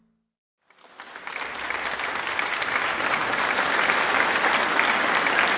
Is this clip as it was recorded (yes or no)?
yes